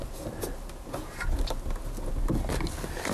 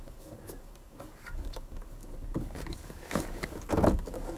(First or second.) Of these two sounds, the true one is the first